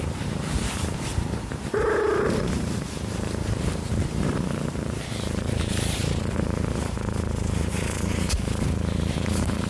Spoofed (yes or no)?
yes